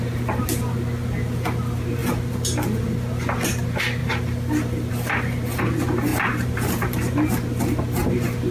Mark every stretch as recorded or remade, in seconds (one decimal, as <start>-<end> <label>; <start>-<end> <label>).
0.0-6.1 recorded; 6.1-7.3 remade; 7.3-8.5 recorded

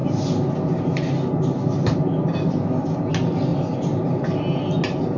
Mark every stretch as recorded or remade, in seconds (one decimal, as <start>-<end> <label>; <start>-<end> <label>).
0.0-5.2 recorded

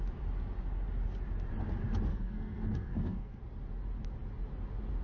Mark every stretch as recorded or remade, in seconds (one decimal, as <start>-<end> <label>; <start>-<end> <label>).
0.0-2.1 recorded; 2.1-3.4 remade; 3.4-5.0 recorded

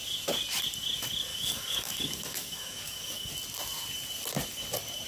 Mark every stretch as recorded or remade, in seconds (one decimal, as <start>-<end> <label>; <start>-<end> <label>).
0.0-1.3 recorded; 1.3-3.3 remade; 3.3-5.1 recorded